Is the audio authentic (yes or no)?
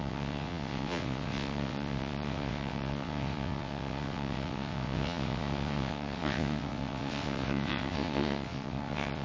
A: no